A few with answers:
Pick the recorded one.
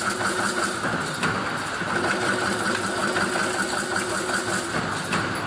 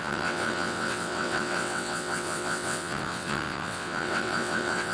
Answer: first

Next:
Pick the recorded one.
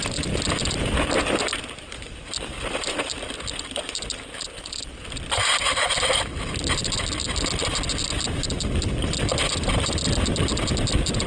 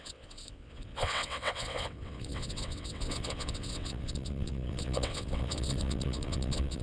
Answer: first